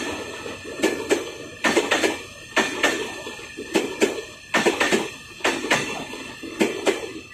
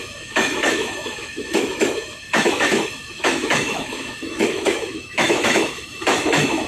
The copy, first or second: second